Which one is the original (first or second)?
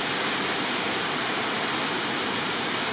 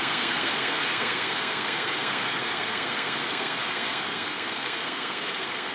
first